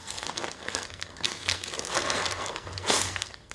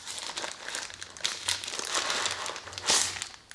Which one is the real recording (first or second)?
second